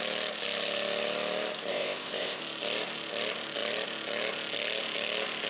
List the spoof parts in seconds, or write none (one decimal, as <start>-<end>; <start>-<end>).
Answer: 1.7-2.4